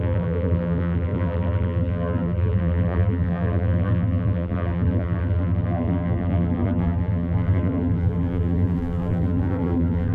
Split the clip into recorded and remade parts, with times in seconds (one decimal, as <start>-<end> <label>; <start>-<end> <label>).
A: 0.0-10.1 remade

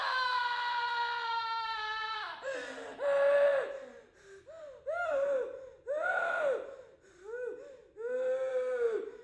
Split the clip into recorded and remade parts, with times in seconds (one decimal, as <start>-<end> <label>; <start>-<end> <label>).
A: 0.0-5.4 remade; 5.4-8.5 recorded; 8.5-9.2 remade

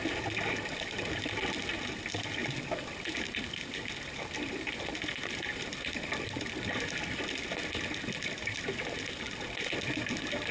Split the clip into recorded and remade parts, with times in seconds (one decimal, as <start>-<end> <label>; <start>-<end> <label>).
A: 0.0-10.5 recorded

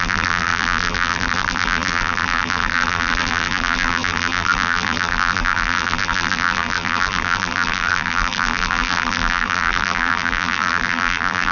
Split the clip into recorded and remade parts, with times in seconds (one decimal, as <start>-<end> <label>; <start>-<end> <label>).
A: 0.0-11.5 remade